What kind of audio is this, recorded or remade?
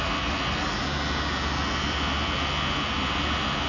recorded